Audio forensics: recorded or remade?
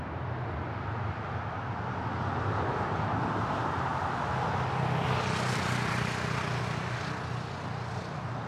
recorded